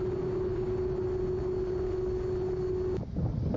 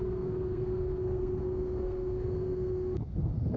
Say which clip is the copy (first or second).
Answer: second